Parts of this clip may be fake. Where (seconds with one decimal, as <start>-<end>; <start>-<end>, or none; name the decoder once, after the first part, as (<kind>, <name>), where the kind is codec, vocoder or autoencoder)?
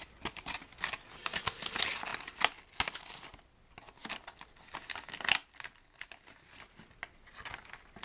none